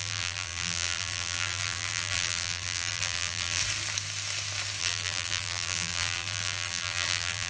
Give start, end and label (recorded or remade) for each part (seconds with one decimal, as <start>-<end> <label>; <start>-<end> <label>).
0.0-3.6 remade; 3.6-4.8 recorded; 4.8-7.5 remade